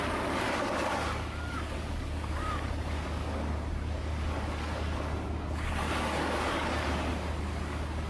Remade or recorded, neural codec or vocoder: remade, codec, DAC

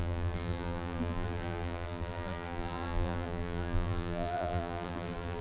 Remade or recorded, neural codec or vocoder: remade, vocoder, BigVGAN v2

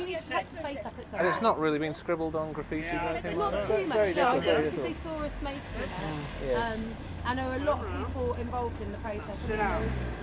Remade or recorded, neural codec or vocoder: recorded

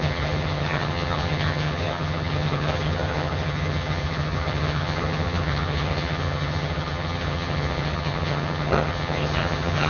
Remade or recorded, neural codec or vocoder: remade, vocoder, HiFi-GAN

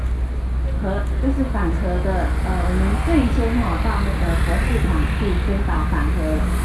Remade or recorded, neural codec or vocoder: recorded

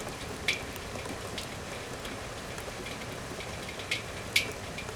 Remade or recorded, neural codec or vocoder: recorded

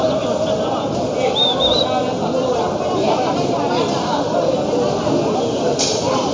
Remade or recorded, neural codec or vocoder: recorded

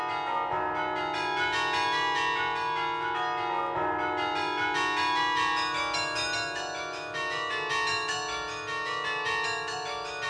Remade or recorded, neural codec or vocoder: recorded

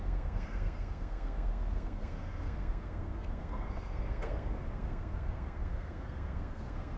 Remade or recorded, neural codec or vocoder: remade, codec, SNAC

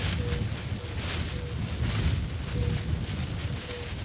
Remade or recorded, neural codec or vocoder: recorded